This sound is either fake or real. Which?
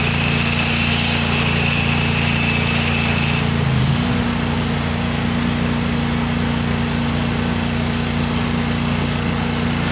real